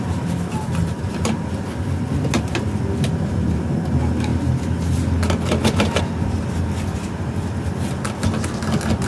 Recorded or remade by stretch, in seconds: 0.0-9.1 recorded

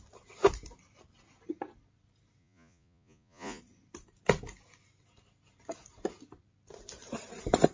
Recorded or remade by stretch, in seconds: 0.0-2.4 recorded; 2.4-3.6 remade; 3.6-7.7 recorded